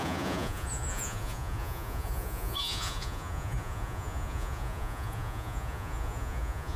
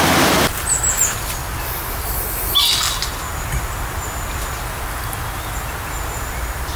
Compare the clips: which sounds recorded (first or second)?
second